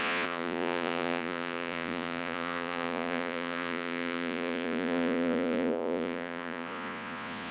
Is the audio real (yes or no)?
no